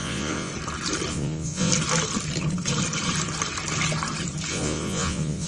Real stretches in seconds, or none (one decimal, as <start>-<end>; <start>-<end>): 0.5-1.1; 1.7-4.5